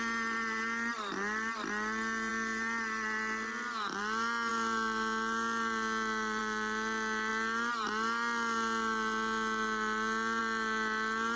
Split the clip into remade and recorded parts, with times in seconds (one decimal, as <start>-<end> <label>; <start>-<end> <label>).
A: 0.0-11.4 recorded